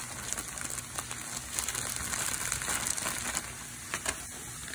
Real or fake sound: real